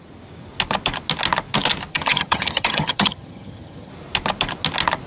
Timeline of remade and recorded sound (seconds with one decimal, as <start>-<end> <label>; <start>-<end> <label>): 0.0-1.9 recorded; 1.9-3.9 remade; 3.9-5.1 recorded